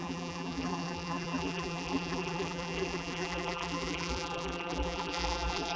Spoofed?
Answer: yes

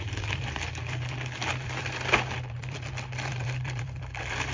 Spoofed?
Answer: yes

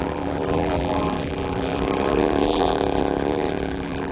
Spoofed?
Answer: yes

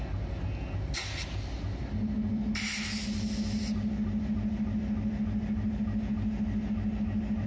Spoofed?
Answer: no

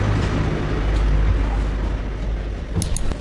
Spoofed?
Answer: no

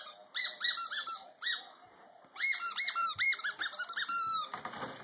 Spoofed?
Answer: yes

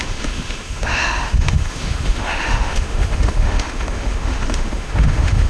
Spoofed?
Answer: yes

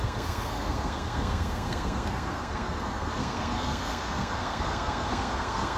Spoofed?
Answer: yes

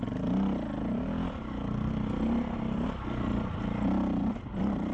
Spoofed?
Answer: no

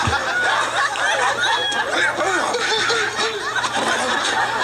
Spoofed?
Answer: no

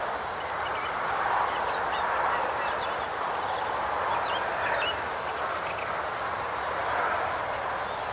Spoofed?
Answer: no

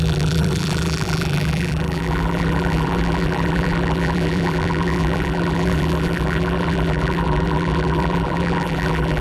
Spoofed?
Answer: yes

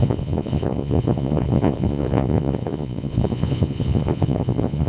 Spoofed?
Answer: yes